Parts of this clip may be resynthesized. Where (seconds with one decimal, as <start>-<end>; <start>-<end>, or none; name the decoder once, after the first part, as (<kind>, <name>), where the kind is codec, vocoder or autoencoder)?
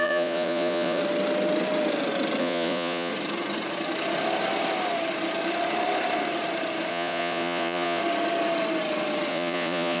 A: 0.0-1.0 (vocoder, Vocos); 2.4-3.1; 6.9-8.0; 9.3-10.0